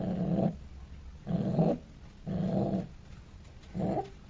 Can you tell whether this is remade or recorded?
recorded